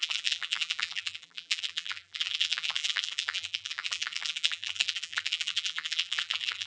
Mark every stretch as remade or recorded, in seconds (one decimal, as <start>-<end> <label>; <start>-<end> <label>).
0.0-6.7 remade